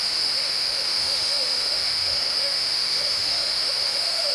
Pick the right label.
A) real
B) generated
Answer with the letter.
B